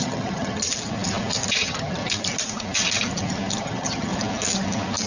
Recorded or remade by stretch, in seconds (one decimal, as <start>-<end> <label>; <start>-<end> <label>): 0.0-0.7 remade; 0.7-1.5 recorded; 1.5-2.0 remade; 2.0-3.6 recorded; 3.6-4.1 remade; 4.1-5.1 recorded